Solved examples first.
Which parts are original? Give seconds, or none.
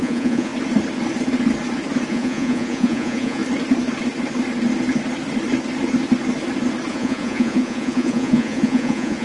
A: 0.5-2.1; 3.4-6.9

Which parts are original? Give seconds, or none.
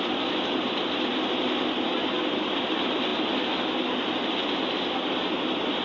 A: 0.0-5.8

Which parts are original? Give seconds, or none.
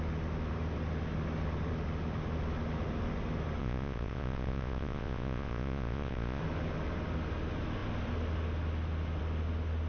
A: 0.0-3.6; 6.4-9.9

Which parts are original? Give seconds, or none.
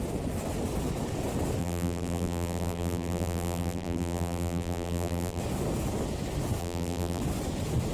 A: 0.0-1.6; 5.4-6.6; 7.2-7.9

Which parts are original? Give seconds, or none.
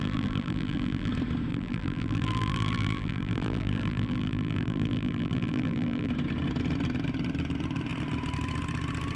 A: 1.1-1.5; 6.1-9.2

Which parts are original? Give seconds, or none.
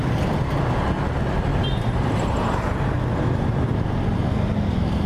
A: 0.0-1.5; 2.7-5.1